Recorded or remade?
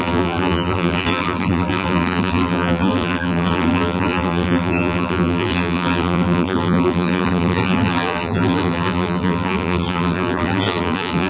remade